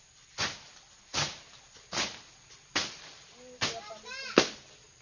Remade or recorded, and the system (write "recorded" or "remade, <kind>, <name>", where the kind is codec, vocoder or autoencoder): recorded